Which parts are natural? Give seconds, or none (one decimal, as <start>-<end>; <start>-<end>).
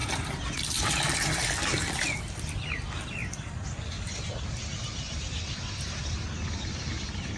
2.5-7.4